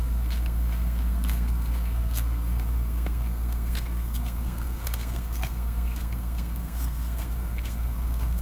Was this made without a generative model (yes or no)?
no